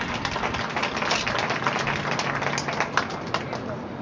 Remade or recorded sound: recorded